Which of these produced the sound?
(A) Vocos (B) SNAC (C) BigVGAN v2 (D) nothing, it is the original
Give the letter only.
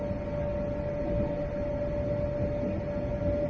D